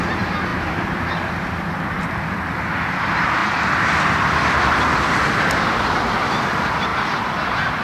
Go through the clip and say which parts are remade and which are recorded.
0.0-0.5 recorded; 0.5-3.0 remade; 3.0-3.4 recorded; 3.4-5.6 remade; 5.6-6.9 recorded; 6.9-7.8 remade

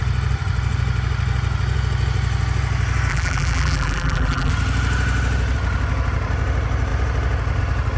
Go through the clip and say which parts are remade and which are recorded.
0.0-3.1 recorded; 3.1-4.5 remade; 4.5-8.0 recorded